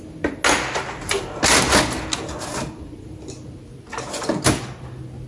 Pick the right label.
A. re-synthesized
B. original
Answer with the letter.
B